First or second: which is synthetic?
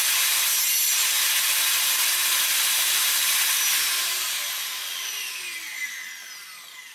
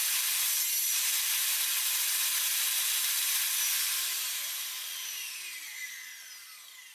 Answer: second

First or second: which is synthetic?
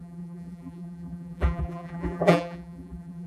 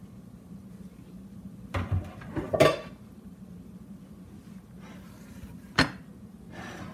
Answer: first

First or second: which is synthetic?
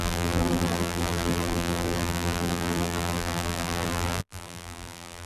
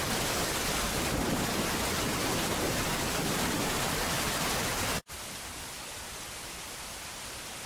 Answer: first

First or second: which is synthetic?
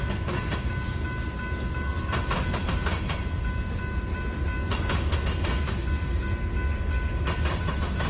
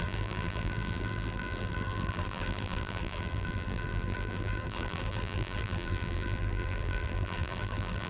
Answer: second